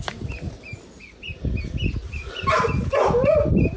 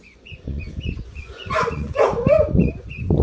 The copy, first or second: second